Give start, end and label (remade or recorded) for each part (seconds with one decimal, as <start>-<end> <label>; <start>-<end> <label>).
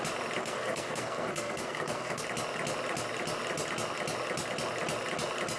0.0-0.4 recorded; 0.4-2.2 remade; 2.2-5.6 recorded